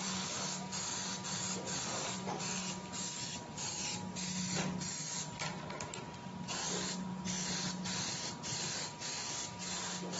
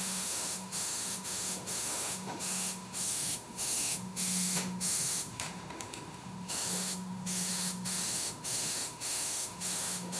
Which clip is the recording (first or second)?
first